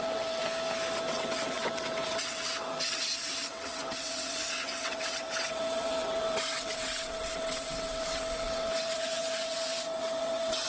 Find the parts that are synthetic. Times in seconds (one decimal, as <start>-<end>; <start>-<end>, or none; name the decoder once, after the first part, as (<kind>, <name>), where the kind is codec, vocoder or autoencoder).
0.0-0.4 (vocoder, WaveNeXt); 1.1-10.7